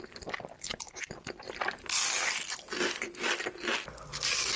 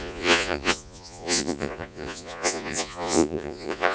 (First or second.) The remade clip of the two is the second